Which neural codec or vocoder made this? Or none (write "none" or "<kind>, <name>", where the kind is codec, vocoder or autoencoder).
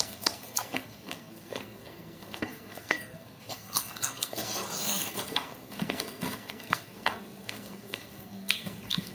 codec, SNAC